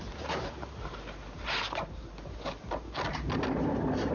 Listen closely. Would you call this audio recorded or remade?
recorded